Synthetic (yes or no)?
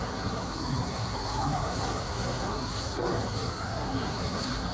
yes